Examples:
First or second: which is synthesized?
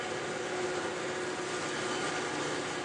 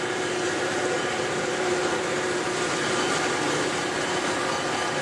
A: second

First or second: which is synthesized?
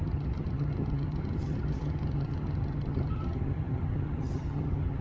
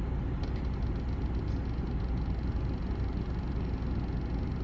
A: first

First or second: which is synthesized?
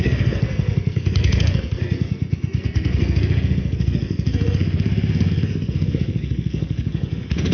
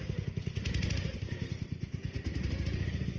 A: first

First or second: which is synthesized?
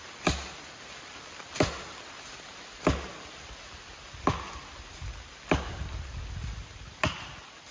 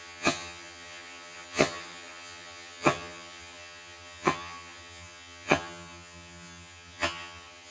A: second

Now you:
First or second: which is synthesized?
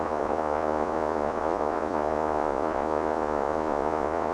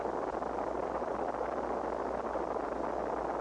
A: first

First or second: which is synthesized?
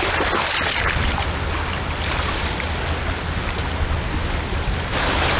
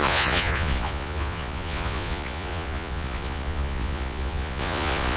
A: second